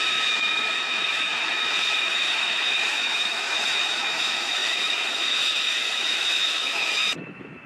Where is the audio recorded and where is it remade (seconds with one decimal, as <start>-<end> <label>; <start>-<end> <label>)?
0.0-7.7 remade